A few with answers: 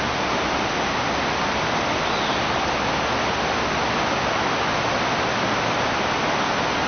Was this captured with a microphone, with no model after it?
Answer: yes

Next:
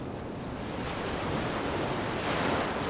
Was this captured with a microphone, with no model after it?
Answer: yes